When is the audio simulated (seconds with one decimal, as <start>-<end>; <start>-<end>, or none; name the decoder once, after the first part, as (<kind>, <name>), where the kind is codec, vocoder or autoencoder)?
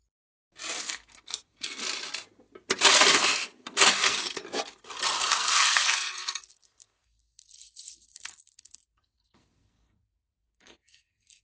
0.8-1.8 (codec, SNAC); 2.9-4.4; 5.3-11.4